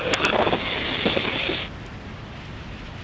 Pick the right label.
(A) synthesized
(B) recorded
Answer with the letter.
B